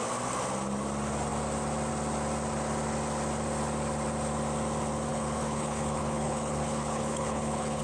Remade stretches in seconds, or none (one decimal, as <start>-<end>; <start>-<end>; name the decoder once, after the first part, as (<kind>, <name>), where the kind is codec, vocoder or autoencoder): 5.1-7.8 (codec, HILCodec)